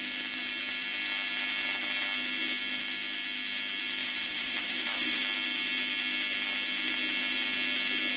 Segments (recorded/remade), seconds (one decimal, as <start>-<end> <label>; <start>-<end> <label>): 0.0-4.0 recorded; 4.0-5.2 remade; 5.2-8.2 recorded